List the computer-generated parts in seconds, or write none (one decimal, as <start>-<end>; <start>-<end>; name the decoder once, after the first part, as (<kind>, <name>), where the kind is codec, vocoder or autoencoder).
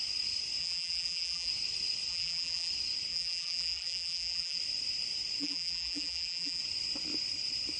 0.6-1.5 (vocoder, BigVGAN v2); 2.1-2.7; 3.1-4.6; 5.4-6.6